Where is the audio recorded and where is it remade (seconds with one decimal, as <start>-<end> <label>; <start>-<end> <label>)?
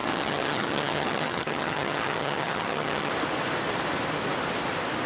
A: 0.0-3.1 remade; 3.1-5.1 recorded